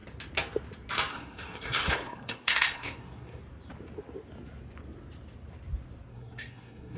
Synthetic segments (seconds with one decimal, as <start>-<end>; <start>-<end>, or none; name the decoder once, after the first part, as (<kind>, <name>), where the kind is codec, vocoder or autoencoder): 1.1-3.4 (codec, SNAC); 6.1-7.0